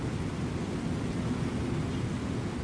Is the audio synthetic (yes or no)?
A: no